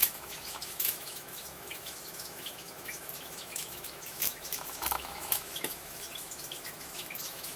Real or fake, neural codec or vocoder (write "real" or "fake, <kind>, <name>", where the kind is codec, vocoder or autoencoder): fake, autoencoder, DAC-VAE